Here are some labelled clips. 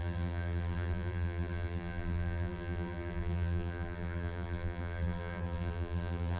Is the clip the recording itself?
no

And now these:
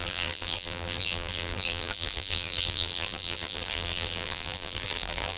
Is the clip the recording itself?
no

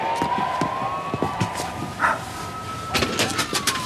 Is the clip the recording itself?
yes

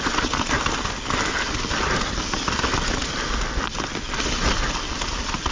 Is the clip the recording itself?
yes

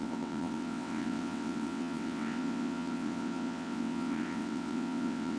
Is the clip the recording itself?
no